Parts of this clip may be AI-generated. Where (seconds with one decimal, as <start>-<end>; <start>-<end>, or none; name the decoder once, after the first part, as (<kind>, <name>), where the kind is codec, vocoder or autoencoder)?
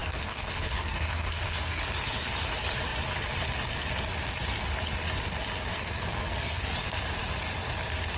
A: 0.0-1.8 (codec, SNAC); 5.7-6.6